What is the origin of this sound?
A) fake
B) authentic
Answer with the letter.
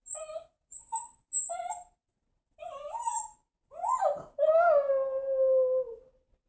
B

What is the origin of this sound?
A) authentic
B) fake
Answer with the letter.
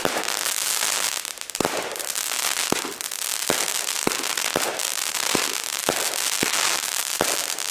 A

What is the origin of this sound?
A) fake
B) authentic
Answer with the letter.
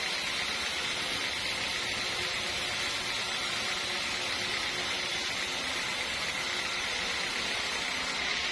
B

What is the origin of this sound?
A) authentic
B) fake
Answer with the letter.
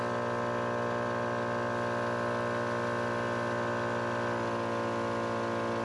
A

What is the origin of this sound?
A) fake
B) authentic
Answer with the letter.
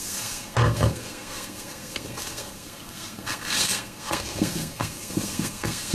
A